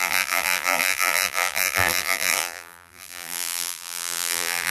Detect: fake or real fake